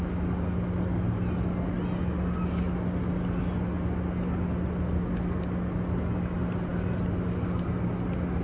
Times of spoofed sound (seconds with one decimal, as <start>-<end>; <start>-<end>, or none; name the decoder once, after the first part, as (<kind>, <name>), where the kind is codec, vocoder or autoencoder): none